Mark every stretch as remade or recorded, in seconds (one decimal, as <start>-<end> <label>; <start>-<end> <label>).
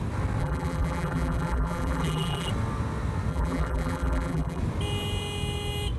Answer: 0.0-0.4 recorded; 0.4-2.5 remade; 2.5-3.3 recorded; 3.3-4.6 remade; 4.6-6.0 recorded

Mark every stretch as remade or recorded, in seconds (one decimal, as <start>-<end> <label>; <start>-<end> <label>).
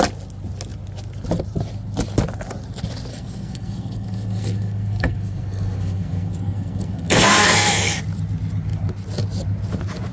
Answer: 0.0-3.1 recorded; 3.1-8.0 remade; 8.0-10.1 recorded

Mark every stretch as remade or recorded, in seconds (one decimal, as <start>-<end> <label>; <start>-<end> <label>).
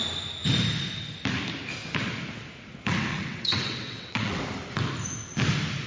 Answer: 0.0-3.1 recorded; 3.1-4.4 remade; 4.4-5.9 recorded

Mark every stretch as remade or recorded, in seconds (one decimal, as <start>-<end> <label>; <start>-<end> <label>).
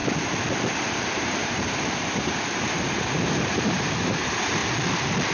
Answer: 0.0-0.9 recorded; 0.9-4.6 remade; 4.6-5.3 recorded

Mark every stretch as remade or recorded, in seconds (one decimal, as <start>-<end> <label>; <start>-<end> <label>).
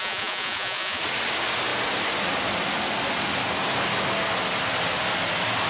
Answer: 0.0-1.0 remade; 1.0-5.7 recorded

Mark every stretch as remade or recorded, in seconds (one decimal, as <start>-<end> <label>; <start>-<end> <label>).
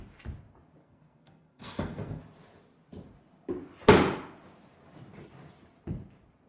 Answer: 0.0-0.8 recorded; 0.8-2.2 remade; 2.2-6.5 recorded